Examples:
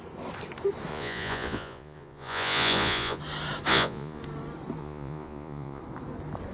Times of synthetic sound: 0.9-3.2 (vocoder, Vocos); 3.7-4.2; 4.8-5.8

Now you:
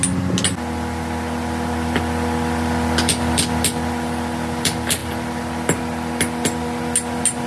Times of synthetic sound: none

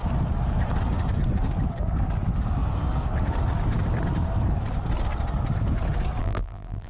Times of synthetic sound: 6.2-6.9 (vocoder, BigVGAN v2)

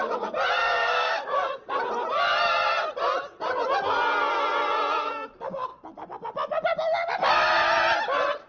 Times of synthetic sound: 0.6-1.5 (codec, DAC)

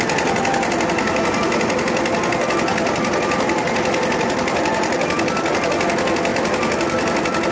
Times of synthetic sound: 2.7-5.7 (vocoder, BigVGAN v2); 6.3-7.5

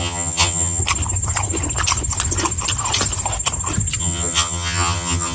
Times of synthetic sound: 0.0-0.8 (vocoder, HiFi-GAN); 4.0-5.3